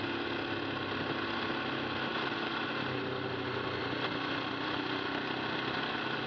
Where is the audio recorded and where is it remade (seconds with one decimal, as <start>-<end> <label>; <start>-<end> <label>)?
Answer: 0.0-6.3 recorded